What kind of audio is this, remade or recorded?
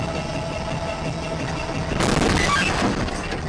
recorded